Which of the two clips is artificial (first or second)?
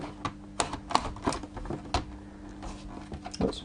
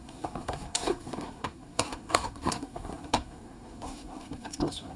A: second